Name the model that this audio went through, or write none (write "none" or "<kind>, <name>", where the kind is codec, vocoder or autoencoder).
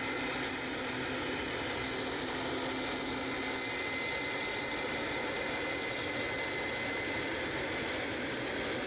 none